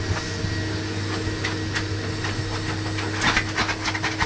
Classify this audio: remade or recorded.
recorded